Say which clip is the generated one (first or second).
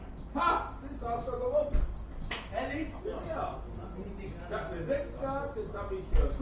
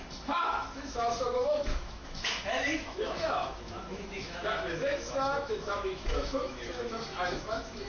second